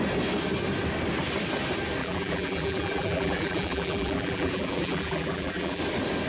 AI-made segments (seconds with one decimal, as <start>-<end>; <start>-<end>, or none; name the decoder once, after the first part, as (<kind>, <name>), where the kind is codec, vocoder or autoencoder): 2.0-5.8 (vocoder, BigVGAN v2)